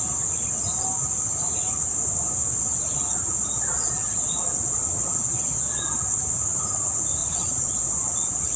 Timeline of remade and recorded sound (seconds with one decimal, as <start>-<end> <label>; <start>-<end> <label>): 0.0-3.1 recorded; 3.1-6.2 remade; 6.2-7.2 recorded; 7.2-8.6 remade